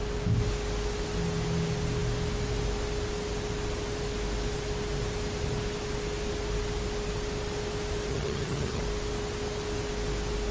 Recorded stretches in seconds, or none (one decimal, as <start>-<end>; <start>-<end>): 0.0-8.1; 8.8-10.5